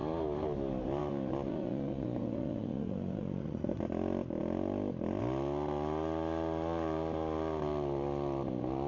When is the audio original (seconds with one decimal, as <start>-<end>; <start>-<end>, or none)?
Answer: 0.0-1.5; 3.8-8.9